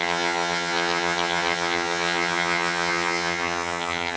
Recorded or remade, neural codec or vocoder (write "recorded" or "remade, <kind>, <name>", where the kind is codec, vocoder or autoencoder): remade, vocoder, HiFi-GAN